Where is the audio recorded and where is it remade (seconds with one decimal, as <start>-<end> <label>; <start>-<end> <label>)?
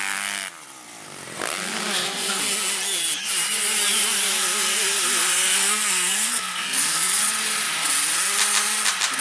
0.0-1.9 recorded; 1.9-2.4 remade; 2.4-5.5 recorded; 5.5-7.2 remade; 7.2-9.2 recorded